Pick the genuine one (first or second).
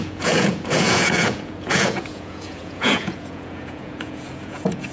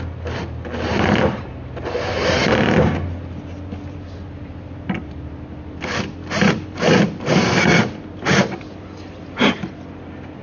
second